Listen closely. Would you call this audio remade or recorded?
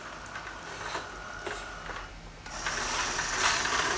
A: recorded